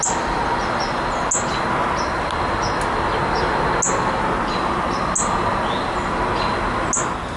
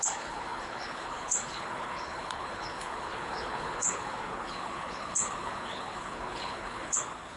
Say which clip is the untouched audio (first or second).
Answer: first